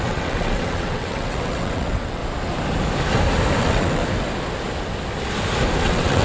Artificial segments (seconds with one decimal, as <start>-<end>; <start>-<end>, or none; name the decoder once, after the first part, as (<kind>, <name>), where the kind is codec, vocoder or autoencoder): 0.0-2.2 (vocoder, WaveNeXt); 3.6-4.0; 5.8-6.2